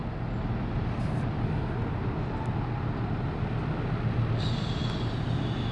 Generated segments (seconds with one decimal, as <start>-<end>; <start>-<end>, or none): none